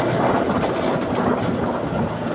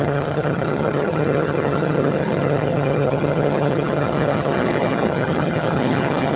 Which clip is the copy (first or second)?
second